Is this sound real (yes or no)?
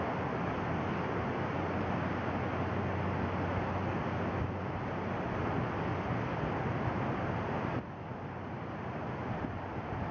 yes